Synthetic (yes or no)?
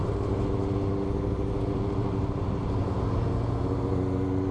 no